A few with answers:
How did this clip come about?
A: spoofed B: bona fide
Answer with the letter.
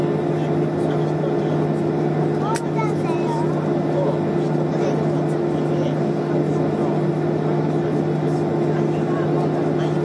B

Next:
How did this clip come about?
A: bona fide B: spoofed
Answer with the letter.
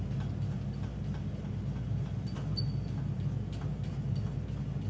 A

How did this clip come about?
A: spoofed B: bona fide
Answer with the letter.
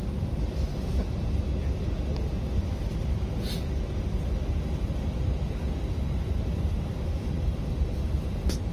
B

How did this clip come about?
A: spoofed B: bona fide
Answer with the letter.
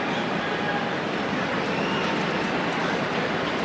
A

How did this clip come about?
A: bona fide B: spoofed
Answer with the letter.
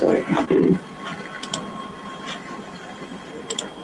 A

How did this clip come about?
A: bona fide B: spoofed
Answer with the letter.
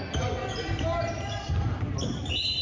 A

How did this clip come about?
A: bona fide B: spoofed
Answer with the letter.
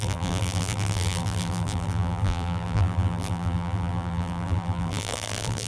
B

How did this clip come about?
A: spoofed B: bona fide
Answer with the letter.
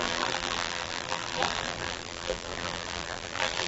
A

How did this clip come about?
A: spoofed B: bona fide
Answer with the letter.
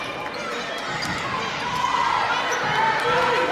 B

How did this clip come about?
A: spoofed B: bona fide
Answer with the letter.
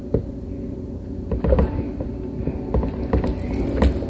B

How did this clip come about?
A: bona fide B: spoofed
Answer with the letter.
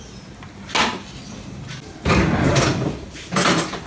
A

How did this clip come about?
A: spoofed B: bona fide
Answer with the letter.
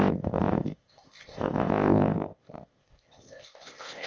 A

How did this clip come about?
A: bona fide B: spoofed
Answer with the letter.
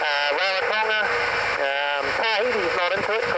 A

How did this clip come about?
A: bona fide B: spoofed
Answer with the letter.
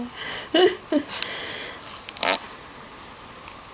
A